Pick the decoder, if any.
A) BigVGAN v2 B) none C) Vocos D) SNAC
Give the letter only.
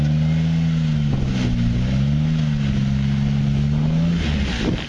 B